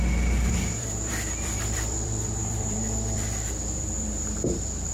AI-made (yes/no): yes